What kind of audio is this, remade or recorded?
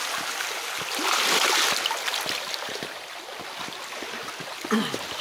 recorded